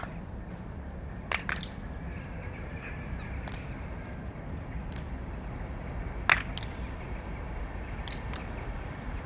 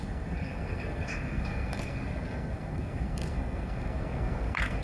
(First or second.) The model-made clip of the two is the second